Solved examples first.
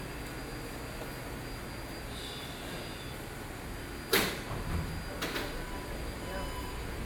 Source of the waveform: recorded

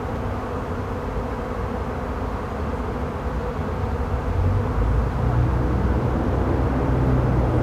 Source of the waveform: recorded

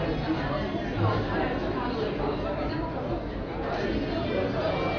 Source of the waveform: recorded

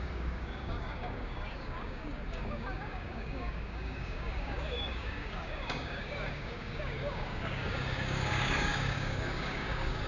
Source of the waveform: remade